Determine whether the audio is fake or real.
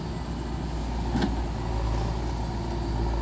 real